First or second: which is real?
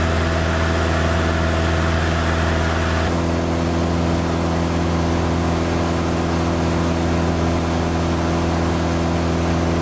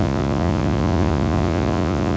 first